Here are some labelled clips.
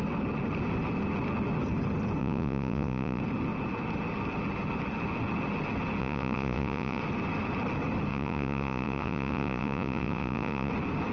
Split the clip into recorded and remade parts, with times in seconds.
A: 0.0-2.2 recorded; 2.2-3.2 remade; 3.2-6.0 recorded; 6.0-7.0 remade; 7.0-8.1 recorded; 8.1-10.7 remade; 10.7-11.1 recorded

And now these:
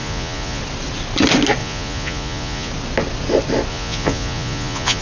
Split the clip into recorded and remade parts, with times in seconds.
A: 0.0-0.6 remade; 0.6-1.6 recorded; 1.6-2.7 remade; 2.7-3.7 recorded; 3.7-5.0 remade